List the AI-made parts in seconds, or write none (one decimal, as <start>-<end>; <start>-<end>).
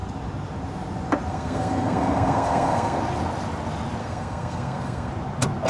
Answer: 1.3-3.0; 4.0-5.1